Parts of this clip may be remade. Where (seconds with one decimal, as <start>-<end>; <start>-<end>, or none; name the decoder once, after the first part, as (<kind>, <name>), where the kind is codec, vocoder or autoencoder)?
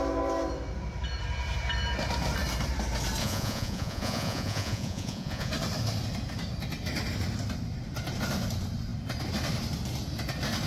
3.2-5.5 (vocoder, Vocos)